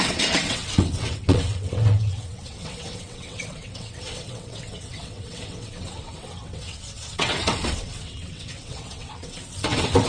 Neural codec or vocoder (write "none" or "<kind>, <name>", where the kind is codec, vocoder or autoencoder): vocoder, WaveNeXt